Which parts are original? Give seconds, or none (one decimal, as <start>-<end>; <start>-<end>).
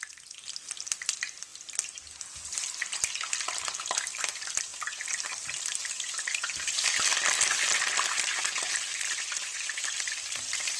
0.0-10.8